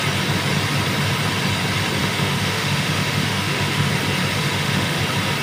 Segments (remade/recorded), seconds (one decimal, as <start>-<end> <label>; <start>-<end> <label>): 0.0-2.0 recorded; 2.0-3.9 remade; 3.9-4.4 recorded; 4.4-5.0 remade; 5.0-5.4 recorded